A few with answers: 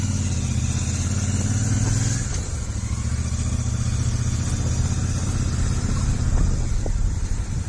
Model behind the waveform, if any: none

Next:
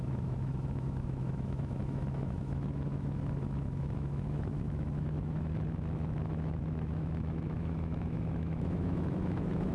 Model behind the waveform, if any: autoencoder, DAC-VAE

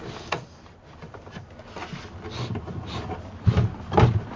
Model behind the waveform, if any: none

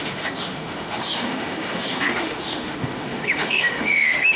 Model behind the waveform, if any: autoencoder, DAC-VAE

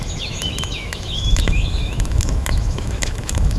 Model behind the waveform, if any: autoencoder, DAC-VAE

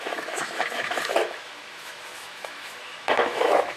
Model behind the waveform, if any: autoencoder, DAC-VAE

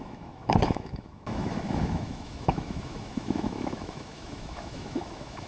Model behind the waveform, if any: autoencoder, DAC-VAE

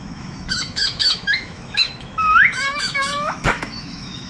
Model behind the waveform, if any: autoencoder, DAC-VAE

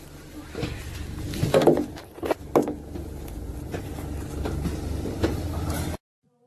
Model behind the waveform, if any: none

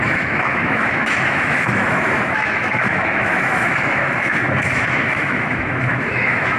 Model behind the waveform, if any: autoencoder, DAC-VAE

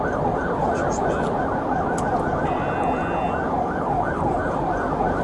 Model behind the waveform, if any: none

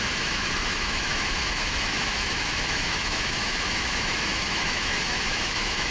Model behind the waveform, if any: autoencoder, DAC-VAE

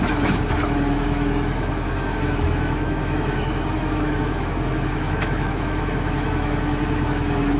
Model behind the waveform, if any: autoencoder, DAC-VAE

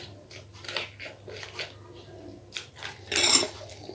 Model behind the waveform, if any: none